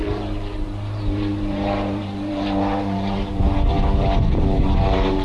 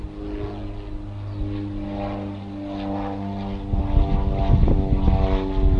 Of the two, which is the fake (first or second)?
first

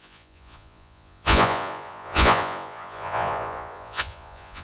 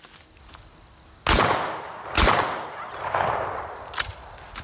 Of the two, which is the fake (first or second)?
first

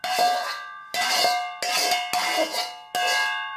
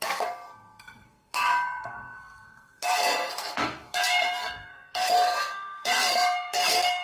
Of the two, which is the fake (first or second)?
second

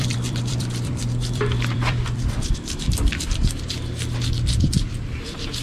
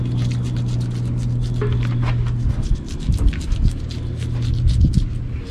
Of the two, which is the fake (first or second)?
first